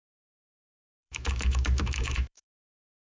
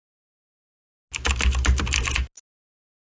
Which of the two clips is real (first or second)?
second